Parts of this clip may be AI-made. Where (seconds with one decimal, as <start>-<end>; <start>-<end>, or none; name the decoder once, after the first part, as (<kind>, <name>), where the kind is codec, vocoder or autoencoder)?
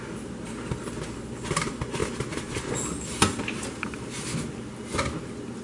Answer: none